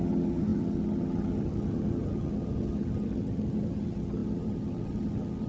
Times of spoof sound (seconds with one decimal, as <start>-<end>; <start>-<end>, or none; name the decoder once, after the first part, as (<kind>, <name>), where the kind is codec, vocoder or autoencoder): 0.0-5.5 (vocoder, HiFi-GAN)